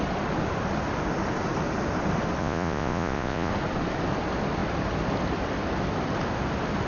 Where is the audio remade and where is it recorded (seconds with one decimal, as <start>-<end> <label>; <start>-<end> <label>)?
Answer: 0.0-2.4 recorded; 2.4-3.5 remade; 3.5-6.9 recorded